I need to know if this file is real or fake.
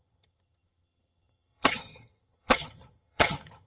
fake